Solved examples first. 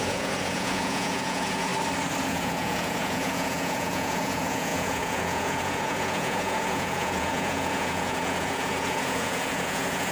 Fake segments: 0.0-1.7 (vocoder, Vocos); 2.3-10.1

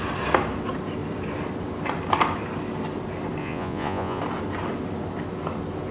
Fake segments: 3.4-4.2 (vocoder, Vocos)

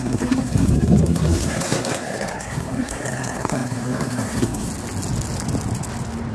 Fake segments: 0.0-4.7 (codec, SNAC)